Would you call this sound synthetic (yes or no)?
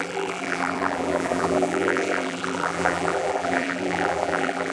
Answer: yes